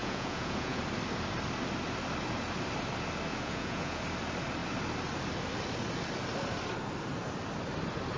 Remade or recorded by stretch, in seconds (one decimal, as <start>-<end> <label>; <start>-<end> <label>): 0.0-0.8 remade; 0.8-3.3 recorded; 3.3-4.0 remade; 4.0-8.2 recorded